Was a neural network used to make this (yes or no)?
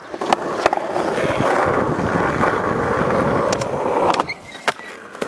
no